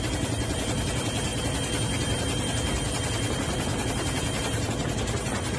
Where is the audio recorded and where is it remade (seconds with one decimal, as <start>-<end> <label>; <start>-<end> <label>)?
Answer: 0.0-5.6 recorded